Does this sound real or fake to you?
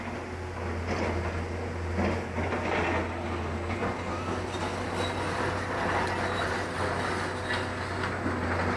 real